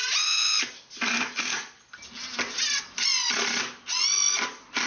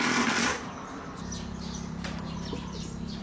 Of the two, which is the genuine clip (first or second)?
first